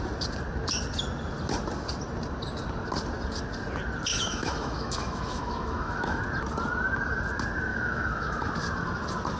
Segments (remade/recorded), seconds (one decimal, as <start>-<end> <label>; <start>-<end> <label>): 0.0-4.1 recorded; 4.1-6.2 remade; 6.2-7.7 recorded; 7.7-8.5 remade; 8.5-9.4 recorded